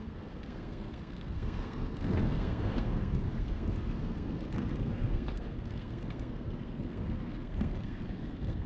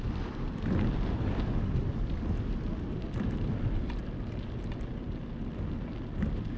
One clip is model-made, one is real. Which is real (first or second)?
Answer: second